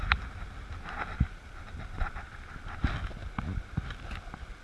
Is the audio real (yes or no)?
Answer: yes